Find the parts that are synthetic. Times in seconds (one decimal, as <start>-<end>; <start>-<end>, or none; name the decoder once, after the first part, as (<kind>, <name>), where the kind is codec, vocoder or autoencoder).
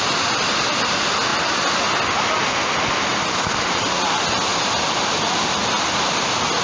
none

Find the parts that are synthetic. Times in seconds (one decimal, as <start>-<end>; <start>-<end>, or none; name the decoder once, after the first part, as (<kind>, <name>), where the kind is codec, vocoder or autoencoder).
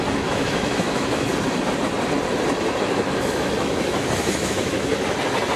0.0-1.3 (autoencoder, DAC-VAE); 2.8-4.9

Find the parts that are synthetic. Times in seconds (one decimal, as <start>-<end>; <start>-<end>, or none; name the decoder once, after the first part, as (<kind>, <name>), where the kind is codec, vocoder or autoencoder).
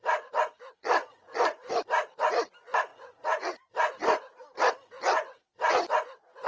none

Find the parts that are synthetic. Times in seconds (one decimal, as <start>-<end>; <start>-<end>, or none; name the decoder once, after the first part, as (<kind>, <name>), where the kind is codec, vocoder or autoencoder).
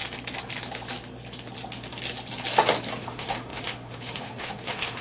3.0-5.0 (autoencoder, DAC-VAE)